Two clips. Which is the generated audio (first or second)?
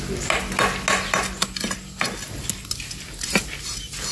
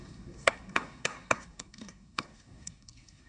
second